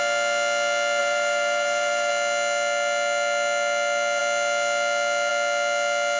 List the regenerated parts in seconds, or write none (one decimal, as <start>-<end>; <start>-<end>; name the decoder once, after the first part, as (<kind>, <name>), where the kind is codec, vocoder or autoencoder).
1.0-2.1 (vocoder, BigVGAN v2)